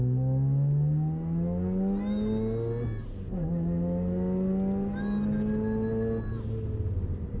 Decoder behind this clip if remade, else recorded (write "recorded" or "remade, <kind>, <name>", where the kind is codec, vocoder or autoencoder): recorded